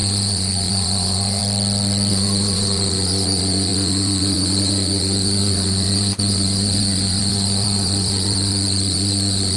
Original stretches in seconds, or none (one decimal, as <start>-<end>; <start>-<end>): 1.4-2.1